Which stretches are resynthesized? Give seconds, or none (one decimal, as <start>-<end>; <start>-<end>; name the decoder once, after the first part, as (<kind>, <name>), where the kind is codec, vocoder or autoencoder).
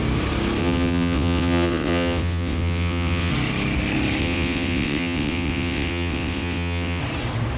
0.6-3.3 (vocoder, WaveNeXt); 4.2-7.0